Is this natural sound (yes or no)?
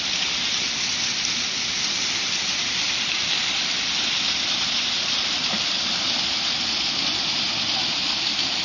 yes